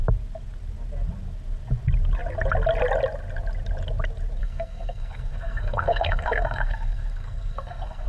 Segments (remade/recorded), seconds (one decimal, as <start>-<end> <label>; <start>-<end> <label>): 0.0-4.4 recorded; 4.4-8.1 remade